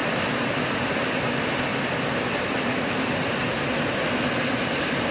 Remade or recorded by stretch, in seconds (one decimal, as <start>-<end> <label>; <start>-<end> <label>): 0.0-5.1 recorded